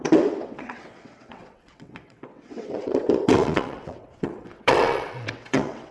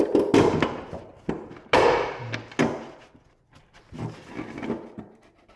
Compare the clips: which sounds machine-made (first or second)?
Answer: first